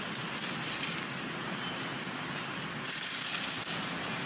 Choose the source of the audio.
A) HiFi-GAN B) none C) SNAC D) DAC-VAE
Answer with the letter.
B